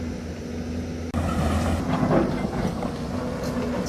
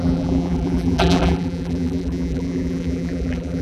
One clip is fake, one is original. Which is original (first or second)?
first